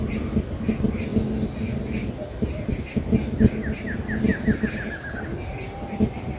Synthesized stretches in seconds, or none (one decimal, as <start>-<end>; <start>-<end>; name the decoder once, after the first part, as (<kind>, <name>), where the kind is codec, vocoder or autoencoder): none